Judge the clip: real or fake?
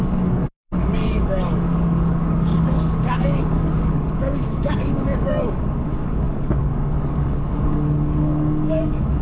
fake